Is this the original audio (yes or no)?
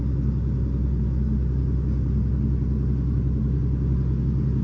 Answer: yes